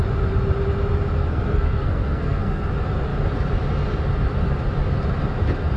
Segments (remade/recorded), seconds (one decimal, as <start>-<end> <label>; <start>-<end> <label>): 0.0-1.2 recorded; 1.2-2.7 remade; 2.7-5.8 recorded